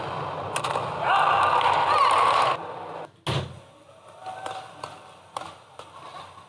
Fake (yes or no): no